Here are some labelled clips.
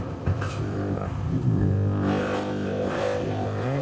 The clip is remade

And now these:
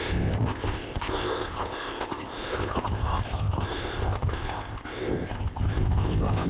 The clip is remade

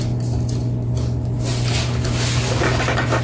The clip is recorded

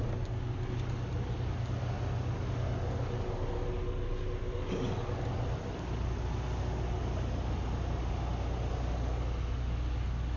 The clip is recorded